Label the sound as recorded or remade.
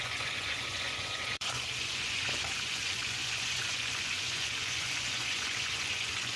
remade